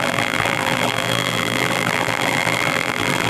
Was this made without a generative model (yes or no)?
no